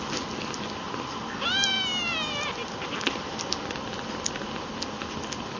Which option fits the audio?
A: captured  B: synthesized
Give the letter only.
A